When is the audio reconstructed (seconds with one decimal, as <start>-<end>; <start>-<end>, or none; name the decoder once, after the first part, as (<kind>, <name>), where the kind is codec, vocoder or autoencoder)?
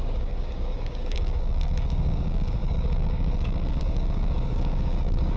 0.0-5.4 (codec, DAC)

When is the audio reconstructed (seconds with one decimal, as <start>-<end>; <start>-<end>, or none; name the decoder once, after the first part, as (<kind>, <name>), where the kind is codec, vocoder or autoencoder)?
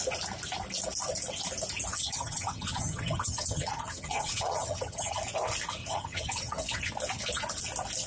1.9-5.2 (vocoder, HiFi-GAN); 5.8-6.9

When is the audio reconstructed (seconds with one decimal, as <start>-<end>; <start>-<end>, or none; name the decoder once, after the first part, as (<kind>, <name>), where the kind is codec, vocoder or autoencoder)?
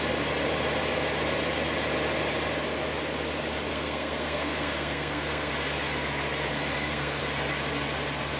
3.7-5.5 (codec, SNAC); 6.5-7.2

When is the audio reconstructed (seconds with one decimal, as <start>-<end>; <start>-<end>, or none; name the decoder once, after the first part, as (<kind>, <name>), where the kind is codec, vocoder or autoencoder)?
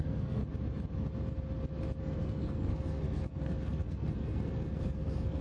0.0-0.4 (codec, SNAC); 2.0-5.4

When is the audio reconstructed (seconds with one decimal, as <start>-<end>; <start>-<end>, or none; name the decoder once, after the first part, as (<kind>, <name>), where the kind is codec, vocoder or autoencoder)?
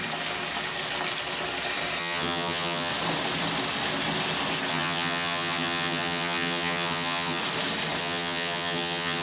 2.0-2.9 (vocoder, HiFi-GAN); 4.7-7.4; 8.0-9.2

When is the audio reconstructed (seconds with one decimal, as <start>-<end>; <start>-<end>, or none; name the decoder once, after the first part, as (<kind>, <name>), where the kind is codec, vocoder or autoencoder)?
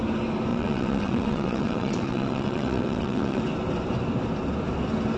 0.5-3.4 (vocoder, WaveNeXt)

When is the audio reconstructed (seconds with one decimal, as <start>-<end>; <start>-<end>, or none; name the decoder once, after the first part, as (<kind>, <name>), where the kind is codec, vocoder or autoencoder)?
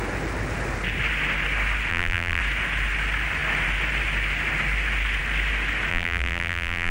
1.9-2.4 (vocoder, BigVGAN v2); 5.9-6.9